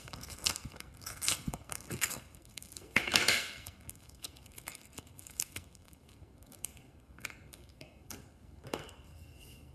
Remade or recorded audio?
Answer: remade